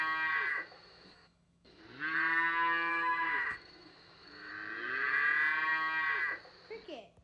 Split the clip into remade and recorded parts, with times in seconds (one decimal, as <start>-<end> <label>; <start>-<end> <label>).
0.0-0.5 recorded; 0.5-1.8 remade; 1.8-2.9 recorded; 2.9-4.5 remade; 4.5-7.2 recorded